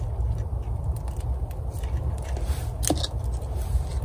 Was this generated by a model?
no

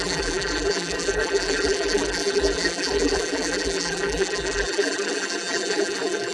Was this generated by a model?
yes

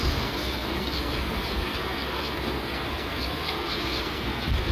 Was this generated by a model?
yes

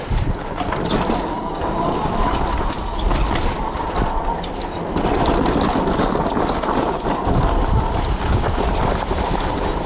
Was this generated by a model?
no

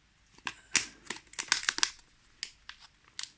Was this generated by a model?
no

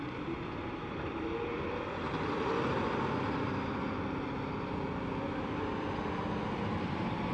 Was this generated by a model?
no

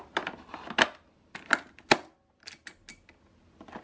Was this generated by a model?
no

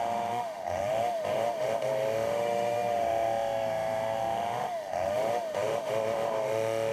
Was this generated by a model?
yes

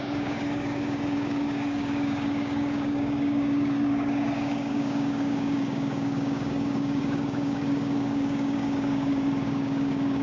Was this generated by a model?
yes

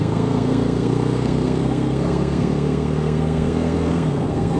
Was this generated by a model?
yes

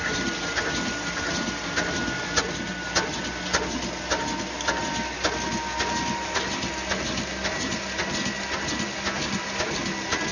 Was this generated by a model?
no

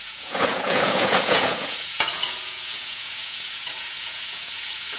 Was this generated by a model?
yes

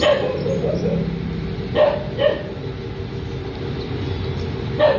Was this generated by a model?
no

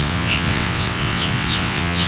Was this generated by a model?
yes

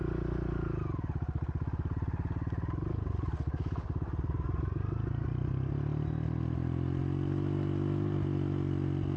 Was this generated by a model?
no